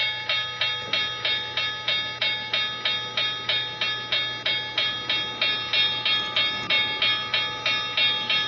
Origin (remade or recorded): recorded